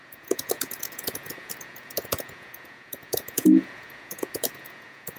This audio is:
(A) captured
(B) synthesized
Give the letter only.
B